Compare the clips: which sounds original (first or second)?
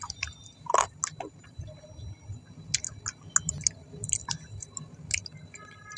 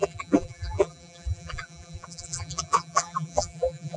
first